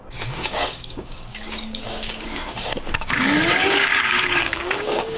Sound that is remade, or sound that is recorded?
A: remade